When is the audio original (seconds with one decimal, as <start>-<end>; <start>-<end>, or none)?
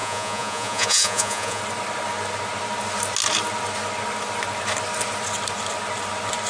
1.6-6.5